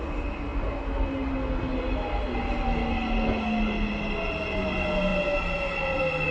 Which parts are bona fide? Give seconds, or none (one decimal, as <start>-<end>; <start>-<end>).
0.0-6.3